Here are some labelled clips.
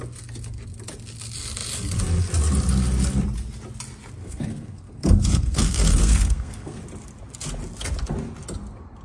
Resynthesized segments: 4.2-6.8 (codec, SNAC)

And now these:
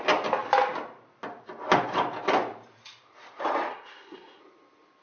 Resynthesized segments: 3.7-4.4 (codec, SNAC)